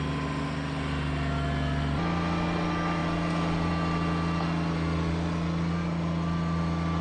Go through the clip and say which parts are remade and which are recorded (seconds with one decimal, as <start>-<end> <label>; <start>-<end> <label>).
0.0-7.0 recorded